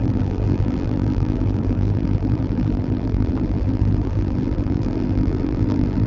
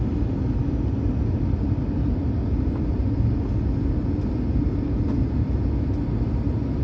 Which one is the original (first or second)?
second